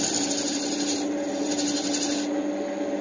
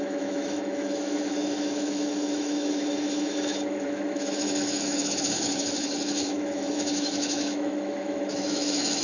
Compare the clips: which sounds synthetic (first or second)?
second